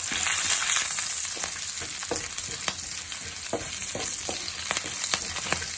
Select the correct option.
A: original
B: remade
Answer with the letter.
A